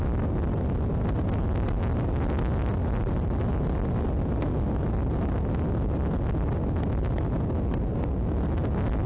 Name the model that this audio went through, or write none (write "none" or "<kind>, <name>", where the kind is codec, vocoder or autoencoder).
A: none